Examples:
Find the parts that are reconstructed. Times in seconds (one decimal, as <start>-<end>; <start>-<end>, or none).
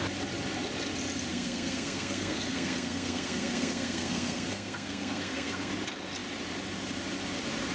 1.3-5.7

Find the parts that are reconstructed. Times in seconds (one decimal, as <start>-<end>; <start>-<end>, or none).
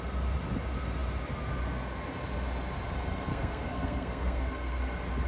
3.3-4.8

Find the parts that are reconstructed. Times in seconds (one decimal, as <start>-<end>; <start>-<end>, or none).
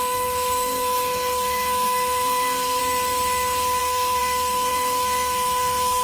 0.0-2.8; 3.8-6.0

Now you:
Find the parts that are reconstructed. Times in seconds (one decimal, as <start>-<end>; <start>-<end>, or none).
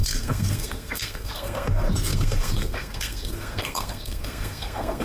0.0-5.0